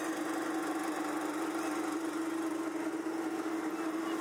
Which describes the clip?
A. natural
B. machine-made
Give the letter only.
A